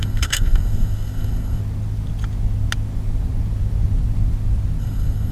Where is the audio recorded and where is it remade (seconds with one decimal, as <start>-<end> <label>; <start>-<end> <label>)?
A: 0.0-1.6 remade; 1.6-4.8 recorded; 4.8-5.3 remade